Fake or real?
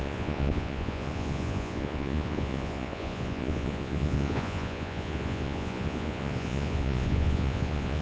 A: fake